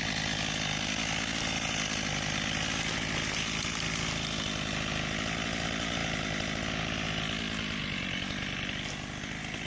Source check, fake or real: real